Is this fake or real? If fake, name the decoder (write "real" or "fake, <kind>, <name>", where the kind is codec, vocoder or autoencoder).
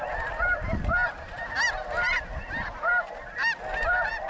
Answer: real